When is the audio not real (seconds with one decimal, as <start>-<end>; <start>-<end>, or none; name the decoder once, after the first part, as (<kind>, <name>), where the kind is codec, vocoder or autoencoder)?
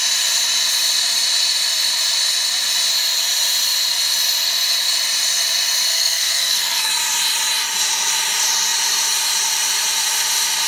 5.9-6.9 (codec, SNAC)